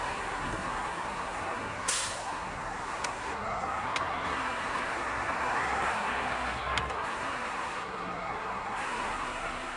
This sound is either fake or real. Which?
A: fake